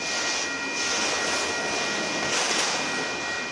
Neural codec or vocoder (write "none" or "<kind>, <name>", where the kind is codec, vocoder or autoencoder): none